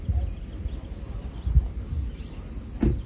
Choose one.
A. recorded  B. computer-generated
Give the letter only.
A